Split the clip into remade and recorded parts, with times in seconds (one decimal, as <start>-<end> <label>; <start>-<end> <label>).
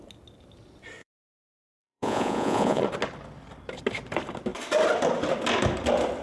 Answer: 0.0-1.0 recorded; 1.0-2.8 remade; 2.8-6.2 recorded